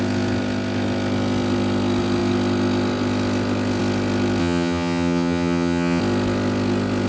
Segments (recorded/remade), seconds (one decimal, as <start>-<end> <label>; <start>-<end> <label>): 0.0-4.4 recorded; 4.4-6.0 remade; 6.0-7.1 recorded